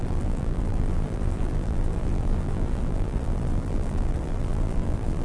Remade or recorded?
remade